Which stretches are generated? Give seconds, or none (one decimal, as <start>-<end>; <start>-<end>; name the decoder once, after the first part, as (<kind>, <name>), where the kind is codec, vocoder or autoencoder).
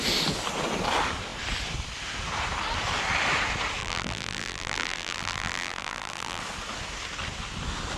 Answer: 3.8-6.4 (vocoder, BigVGAN v2)